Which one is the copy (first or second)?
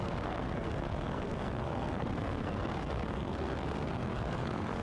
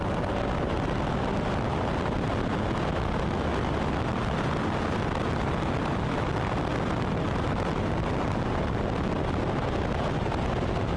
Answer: first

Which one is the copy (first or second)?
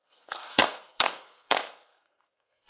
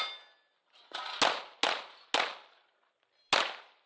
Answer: first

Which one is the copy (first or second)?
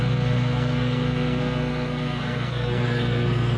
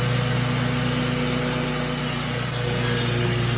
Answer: first